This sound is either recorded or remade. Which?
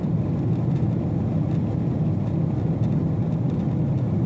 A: remade